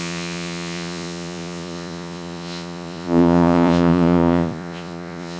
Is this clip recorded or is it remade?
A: remade